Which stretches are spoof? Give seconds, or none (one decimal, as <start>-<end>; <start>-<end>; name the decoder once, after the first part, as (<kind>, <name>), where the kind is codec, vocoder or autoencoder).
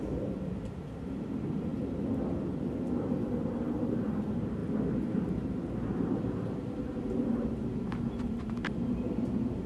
0.0-1.7 (vocoder, BigVGAN v2); 3.0-4.6; 5.9-9.7